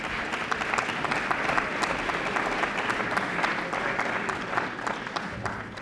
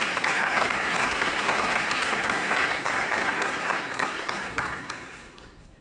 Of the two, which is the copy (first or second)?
second